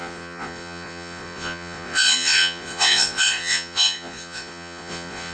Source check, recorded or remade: remade